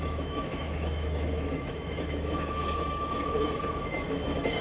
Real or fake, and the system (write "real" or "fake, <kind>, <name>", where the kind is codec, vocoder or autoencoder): fake, autoencoder, DAC-VAE